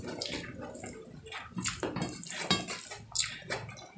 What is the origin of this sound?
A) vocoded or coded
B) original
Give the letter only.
B